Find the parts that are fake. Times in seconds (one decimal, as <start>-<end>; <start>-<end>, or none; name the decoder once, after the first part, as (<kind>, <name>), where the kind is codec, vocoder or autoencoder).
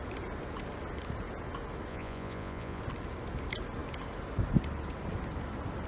1.9-2.8 (vocoder, Vocos)